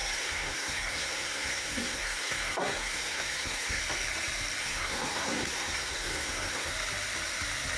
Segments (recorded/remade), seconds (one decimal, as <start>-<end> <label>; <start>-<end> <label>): 0.0-3.8 remade; 3.8-4.6 recorded; 4.6-6.7 remade; 6.7-7.8 recorded